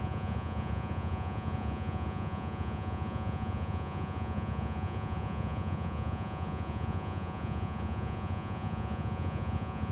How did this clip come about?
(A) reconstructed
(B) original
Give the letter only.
A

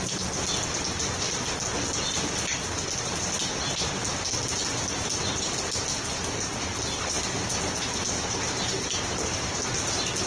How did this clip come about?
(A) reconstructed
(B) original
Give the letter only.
B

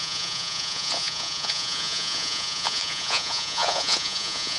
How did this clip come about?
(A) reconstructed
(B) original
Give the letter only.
A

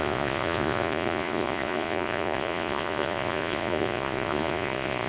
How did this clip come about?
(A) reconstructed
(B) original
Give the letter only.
A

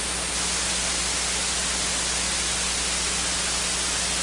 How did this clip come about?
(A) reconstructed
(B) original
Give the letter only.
B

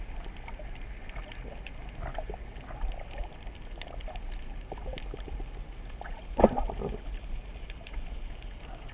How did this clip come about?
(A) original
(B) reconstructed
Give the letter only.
A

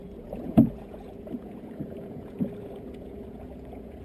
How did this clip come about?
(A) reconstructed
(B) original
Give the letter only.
A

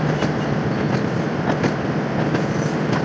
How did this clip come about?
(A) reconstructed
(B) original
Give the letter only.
B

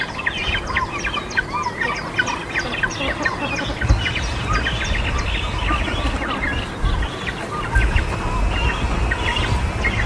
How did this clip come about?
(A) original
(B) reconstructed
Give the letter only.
A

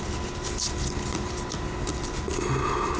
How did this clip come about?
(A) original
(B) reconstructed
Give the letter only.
A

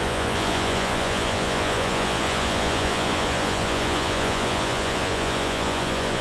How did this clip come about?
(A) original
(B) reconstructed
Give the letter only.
B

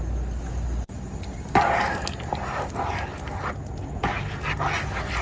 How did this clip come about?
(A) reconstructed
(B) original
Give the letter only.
B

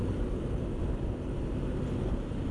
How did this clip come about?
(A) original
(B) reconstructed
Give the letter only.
A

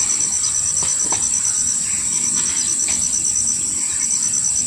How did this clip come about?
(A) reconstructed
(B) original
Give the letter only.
B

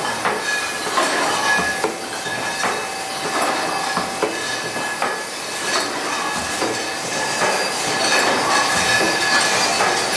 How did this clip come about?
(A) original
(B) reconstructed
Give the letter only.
A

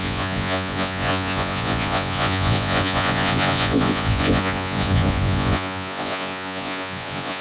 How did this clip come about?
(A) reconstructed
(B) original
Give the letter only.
A